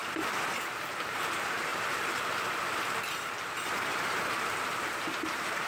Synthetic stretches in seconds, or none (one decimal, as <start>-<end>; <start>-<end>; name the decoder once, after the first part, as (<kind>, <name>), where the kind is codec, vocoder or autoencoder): 0.9-5.7 (vocoder, BigVGAN v2)